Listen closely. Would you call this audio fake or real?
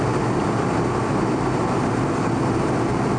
real